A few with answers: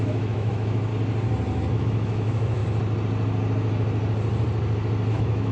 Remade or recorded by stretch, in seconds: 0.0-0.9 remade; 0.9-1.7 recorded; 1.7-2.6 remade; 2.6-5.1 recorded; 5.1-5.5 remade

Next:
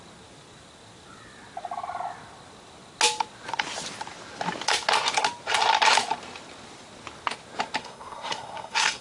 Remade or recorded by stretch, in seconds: 0.0-7.8 recorded; 7.8-9.0 remade

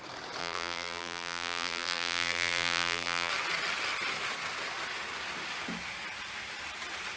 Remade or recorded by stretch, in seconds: 0.0-0.4 recorded; 0.4-3.3 remade; 3.3-7.2 recorded

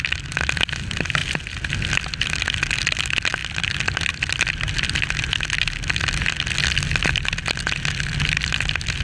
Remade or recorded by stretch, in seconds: 0.0-9.0 recorded